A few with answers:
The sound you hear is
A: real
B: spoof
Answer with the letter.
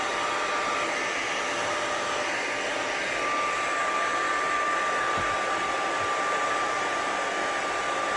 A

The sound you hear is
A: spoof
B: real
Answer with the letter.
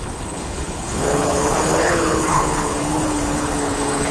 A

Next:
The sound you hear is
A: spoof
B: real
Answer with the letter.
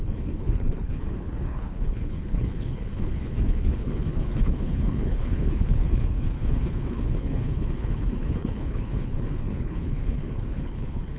A